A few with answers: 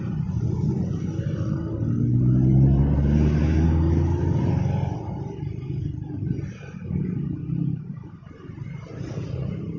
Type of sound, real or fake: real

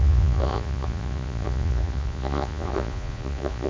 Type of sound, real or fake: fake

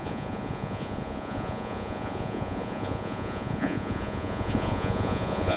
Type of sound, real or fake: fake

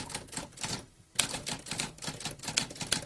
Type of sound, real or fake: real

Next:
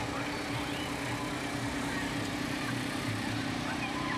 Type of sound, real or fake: fake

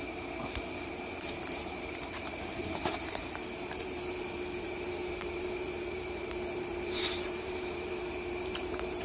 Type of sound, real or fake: fake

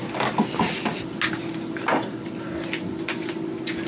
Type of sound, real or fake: real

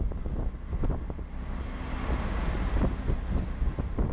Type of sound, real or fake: real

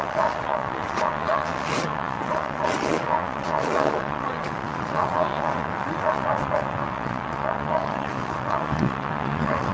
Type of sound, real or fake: fake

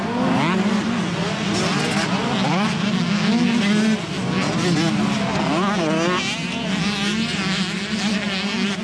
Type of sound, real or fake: real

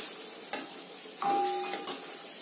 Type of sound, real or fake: real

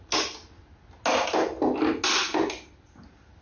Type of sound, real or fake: real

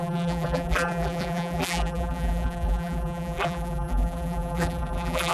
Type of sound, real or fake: fake